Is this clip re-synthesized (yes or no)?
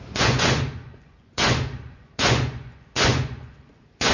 yes